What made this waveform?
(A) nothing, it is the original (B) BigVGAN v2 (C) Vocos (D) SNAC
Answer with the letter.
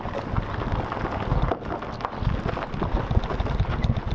A